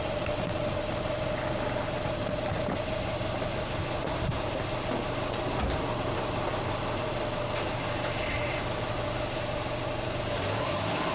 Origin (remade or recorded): recorded